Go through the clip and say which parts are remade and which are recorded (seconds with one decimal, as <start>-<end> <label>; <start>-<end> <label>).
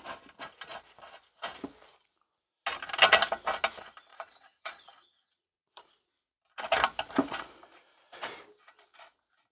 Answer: 0.0-4.1 recorded; 4.1-5.8 remade; 5.8-9.5 recorded